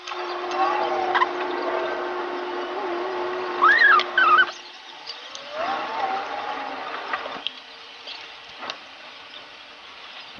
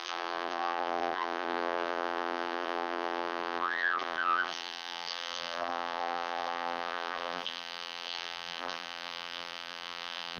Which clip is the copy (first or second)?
second